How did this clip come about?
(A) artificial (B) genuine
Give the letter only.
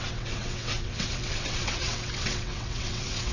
A